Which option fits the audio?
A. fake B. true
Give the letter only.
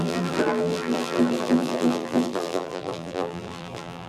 A